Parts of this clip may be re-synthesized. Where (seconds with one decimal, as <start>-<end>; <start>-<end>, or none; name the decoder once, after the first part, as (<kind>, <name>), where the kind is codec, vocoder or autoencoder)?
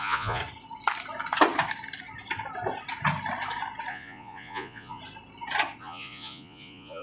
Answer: 0.0-0.4 (vocoder, Vocos); 3.9-5.0; 5.8-7.0